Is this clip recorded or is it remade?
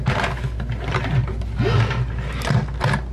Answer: recorded